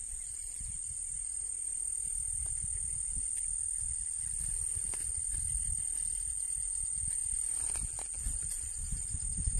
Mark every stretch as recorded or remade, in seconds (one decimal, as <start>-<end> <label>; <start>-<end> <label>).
0.0-1.2 recorded; 1.2-1.7 remade; 1.7-6.3 recorded; 6.3-7.2 remade; 7.2-8.2 recorded; 8.2-9.6 remade